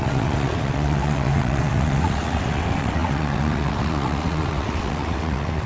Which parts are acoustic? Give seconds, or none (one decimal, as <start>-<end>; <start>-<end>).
none

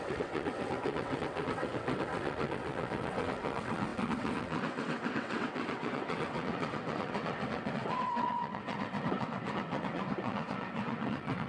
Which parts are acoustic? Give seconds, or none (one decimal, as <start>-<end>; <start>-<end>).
none

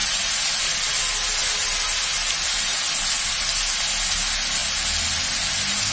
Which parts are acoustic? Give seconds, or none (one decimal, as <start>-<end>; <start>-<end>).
0.0-5.9

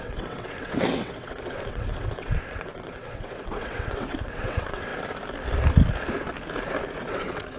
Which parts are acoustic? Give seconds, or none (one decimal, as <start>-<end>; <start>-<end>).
4.9-7.0

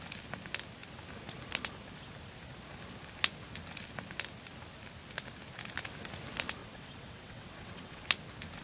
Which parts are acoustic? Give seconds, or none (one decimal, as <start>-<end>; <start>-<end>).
0.0-6.6; 8.0-8.6

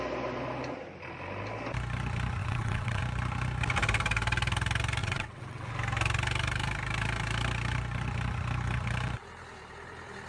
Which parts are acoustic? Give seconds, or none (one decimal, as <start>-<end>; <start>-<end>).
0.0-2.4; 3.0-5.0; 5.7-10.3